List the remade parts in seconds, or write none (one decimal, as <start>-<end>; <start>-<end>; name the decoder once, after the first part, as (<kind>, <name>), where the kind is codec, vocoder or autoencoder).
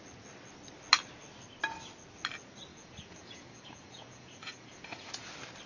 2.7-5.3 (vocoder, Vocos)